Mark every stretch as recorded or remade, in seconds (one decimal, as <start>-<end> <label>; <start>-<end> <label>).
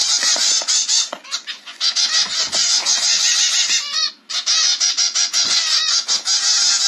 0.0-4.1 remade; 4.1-4.6 recorded; 4.6-6.1 remade; 6.1-6.9 recorded